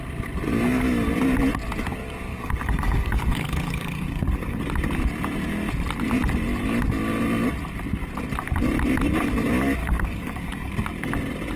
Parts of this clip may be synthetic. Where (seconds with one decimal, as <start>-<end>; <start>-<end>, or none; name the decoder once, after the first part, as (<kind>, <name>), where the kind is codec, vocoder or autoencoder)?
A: 2.3-4.6 (codec, DAC); 9.8-10.7